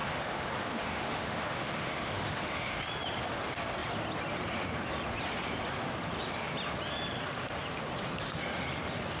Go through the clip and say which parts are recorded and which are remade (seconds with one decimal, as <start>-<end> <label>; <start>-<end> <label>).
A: 0.0-2.8 remade; 2.8-9.2 recorded